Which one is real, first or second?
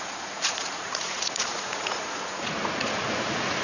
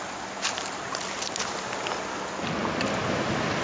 second